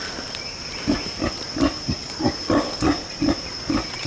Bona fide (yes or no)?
yes